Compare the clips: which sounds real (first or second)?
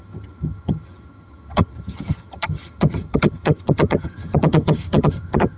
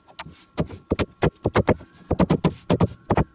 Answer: second